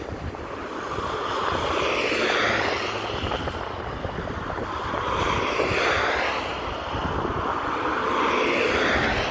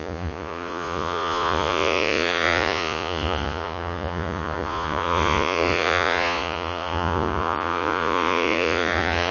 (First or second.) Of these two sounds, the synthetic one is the second